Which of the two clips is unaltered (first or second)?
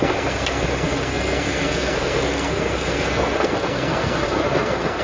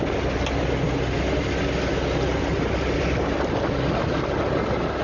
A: second